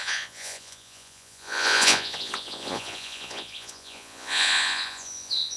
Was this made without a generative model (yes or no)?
no